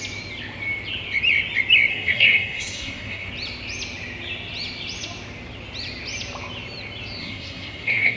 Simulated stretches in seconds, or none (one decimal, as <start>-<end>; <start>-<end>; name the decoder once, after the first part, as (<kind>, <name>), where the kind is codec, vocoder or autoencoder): 1.9-3.3 (codec, SNAC); 7.2-8.2